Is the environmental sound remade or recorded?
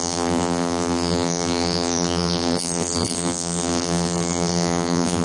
remade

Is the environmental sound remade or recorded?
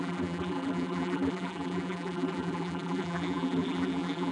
remade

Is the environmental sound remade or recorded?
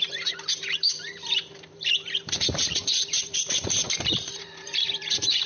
remade